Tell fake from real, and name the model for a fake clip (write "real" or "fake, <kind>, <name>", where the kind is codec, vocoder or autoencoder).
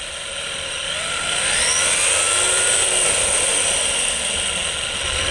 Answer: real